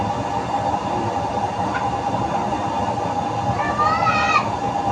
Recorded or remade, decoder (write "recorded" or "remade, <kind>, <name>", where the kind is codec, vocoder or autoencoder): recorded